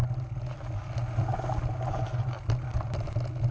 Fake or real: real